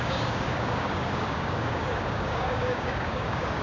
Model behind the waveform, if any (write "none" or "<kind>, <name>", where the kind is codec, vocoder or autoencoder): codec, DAC